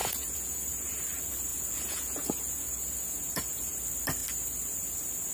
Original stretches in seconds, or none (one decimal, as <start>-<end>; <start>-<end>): 1.0-1.5; 3.8-5.3